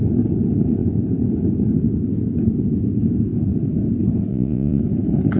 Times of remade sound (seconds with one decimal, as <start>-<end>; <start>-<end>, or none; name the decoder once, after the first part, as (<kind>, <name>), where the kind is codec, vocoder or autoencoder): 4.3-4.8 (vocoder, Vocos)